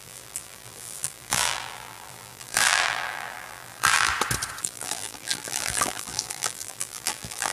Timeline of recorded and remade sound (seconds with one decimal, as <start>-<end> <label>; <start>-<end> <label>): 0.0-4.1 remade; 4.1-4.6 recorded; 4.6-7.5 remade